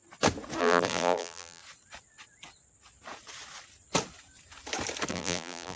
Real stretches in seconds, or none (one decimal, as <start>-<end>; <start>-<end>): 0.0-0.6; 1.6-5.1